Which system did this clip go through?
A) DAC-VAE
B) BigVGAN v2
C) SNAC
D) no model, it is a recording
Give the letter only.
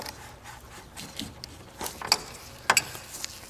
D